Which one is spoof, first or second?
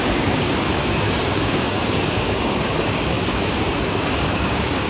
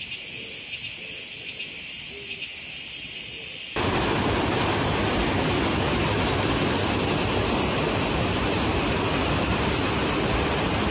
first